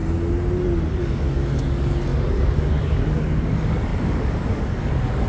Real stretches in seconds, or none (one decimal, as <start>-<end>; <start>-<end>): 0.0-1.0